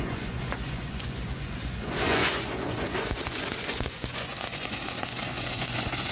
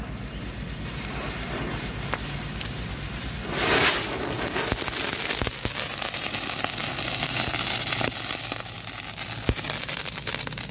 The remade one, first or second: first